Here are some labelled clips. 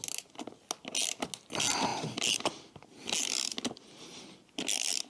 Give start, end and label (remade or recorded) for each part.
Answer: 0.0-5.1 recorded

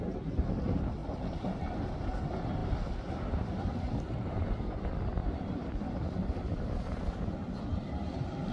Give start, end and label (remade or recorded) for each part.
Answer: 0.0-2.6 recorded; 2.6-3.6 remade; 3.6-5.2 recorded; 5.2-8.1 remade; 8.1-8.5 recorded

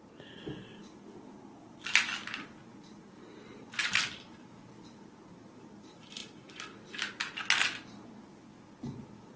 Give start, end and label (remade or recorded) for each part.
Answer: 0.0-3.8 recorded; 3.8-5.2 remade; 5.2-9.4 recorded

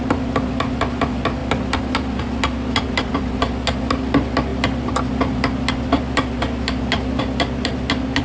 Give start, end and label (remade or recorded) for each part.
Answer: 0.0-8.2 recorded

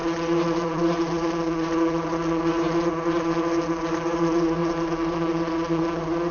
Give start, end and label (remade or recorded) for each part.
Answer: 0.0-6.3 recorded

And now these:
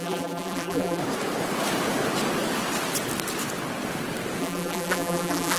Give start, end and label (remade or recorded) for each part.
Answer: 0.0-1.0 remade; 1.0-4.4 recorded; 4.4-5.6 remade